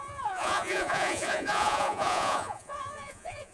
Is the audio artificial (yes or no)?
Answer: yes